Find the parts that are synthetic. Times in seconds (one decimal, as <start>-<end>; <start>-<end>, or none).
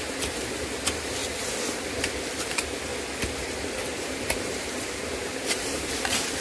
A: 0.0-1.2; 2.4-2.9; 3.7-6.4